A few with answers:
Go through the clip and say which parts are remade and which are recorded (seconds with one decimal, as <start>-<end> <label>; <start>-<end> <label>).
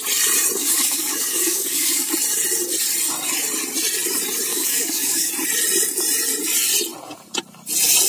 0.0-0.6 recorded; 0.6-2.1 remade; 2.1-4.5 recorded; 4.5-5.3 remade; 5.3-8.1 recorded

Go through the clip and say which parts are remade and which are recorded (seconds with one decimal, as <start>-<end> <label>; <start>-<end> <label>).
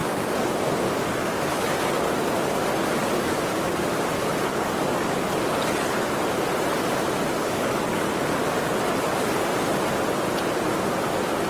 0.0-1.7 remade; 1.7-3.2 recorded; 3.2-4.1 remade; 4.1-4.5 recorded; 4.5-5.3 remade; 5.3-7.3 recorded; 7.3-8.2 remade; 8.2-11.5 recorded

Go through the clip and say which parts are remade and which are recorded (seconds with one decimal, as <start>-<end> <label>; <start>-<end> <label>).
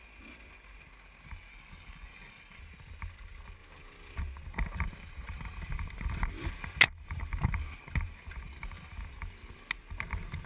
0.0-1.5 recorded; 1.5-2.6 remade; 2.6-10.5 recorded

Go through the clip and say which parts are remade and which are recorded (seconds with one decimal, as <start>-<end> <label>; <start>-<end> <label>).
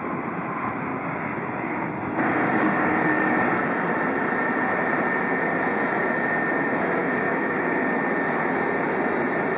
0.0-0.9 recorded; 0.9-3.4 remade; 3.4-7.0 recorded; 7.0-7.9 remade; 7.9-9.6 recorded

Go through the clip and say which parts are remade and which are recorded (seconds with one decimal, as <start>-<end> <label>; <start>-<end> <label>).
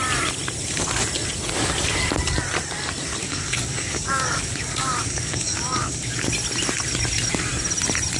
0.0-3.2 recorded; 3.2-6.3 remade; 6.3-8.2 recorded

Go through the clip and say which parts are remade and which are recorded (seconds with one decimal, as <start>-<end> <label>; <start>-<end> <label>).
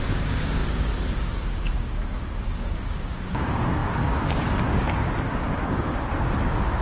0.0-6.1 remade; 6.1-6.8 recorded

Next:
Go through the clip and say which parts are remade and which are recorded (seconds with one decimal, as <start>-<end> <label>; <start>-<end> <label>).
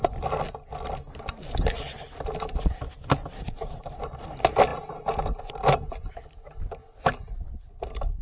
0.0-8.2 recorded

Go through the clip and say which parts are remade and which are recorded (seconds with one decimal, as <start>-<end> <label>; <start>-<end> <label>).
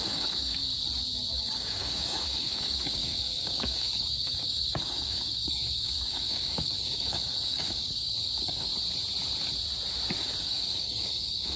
0.0-0.7 remade; 0.7-1.3 recorded; 1.3-8.7 remade; 8.7-10.4 recorded; 10.4-11.6 remade